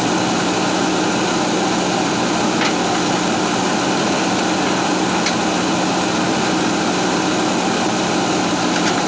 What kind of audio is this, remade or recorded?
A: recorded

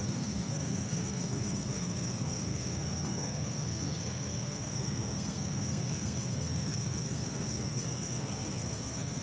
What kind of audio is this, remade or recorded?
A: remade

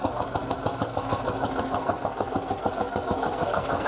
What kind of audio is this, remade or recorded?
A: remade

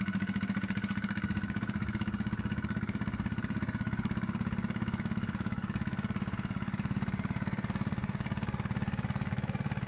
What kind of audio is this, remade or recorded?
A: remade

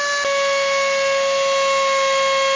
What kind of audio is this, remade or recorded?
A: recorded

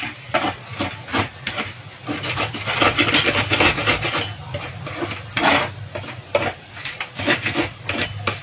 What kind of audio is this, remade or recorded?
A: recorded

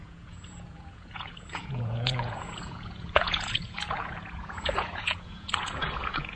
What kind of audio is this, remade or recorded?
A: remade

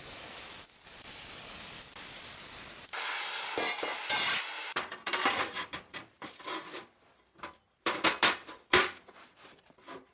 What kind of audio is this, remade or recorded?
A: remade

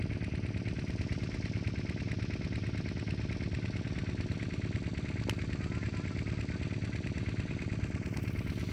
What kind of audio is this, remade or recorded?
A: recorded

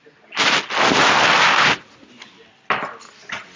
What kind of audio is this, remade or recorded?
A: recorded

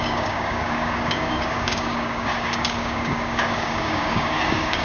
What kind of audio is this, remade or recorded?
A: remade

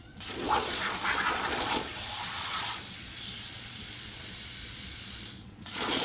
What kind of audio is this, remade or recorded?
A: remade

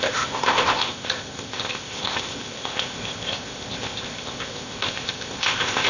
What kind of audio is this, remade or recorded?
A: remade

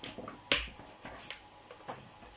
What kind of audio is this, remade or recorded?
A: recorded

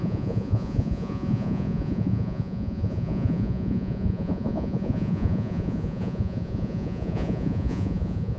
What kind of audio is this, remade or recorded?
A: remade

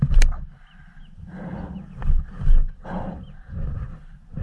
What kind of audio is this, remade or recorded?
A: recorded